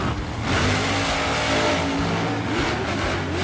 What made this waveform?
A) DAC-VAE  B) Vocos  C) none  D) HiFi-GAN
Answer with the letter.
C